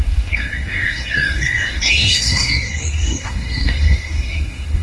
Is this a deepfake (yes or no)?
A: yes